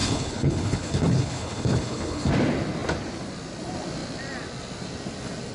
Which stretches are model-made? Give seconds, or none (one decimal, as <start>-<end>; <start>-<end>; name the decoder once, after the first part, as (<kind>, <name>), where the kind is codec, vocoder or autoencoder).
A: 0.0-2.3 (codec, HILCodec)